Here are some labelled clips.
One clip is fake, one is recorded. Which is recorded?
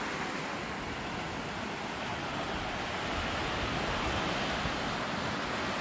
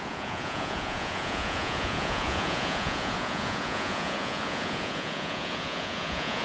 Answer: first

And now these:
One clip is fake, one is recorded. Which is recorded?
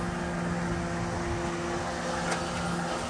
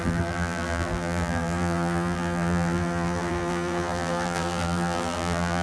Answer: first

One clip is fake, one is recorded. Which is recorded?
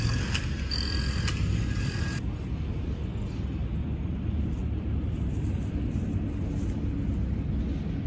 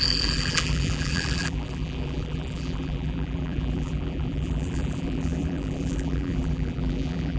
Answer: first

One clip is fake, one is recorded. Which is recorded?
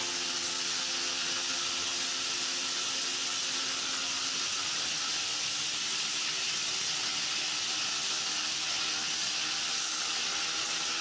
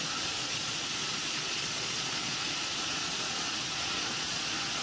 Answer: first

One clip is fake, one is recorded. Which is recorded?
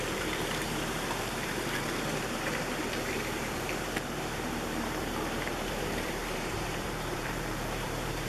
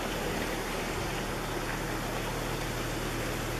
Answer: second